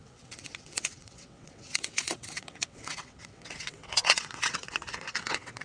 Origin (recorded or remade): remade